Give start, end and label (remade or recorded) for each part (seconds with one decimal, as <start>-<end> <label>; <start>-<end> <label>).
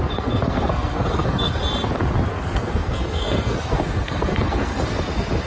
0.0-1.6 remade; 1.6-2.3 recorded; 2.3-4.7 remade; 4.7-5.5 recorded